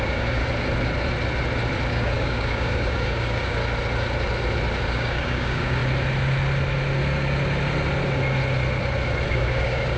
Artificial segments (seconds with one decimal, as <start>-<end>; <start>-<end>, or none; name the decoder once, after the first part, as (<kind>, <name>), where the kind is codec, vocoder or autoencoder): 0.0-0.4 (codec, DAC); 1.9-3.6; 4.9-5.8; 9.3-10.0